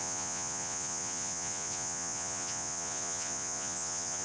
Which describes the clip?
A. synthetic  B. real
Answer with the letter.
A